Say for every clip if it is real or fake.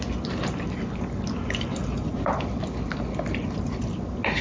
real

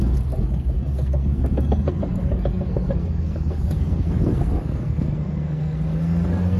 fake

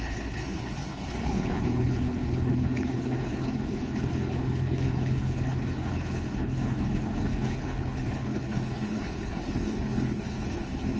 fake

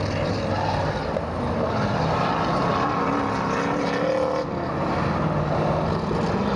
real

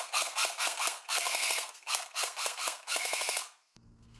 fake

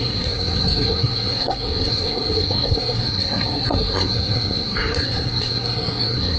fake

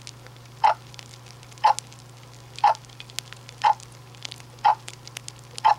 real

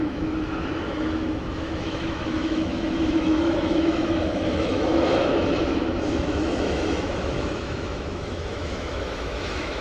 fake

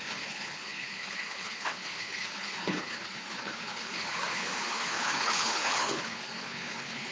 fake